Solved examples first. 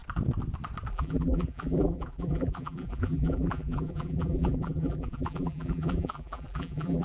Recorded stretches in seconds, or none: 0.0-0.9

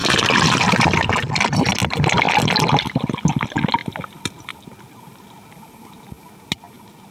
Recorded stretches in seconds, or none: 0.8-3.8; 5.3-7.1

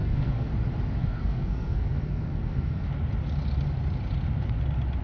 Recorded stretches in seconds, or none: 0.5-1.0; 2.9-5.0

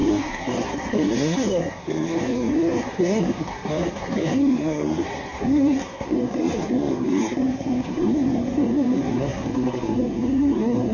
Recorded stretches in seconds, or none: none